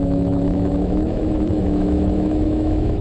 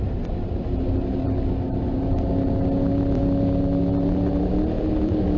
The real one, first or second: second